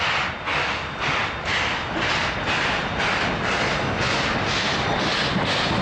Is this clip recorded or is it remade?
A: recorded